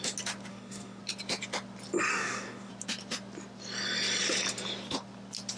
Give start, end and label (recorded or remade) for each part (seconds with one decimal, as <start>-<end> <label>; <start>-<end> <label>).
0.0-0.5 recorded; 0.5-1.0 remade; 1.0-2.1 recorded; 2.1-2.7 remade; 2.7-5.6 recorded